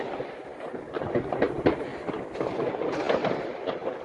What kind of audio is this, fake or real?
real